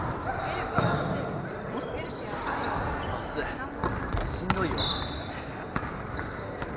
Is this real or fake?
real